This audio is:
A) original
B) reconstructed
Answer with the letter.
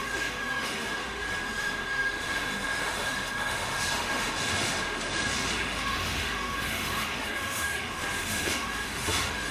B